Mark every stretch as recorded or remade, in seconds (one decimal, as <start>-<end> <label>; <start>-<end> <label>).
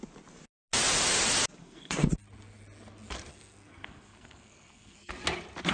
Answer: 0.0-1.6 recorded; 1.6-2.1 remade; 2.1-3.3 recorded; 3.3-5.1 remade; 5.1-5.7 recorded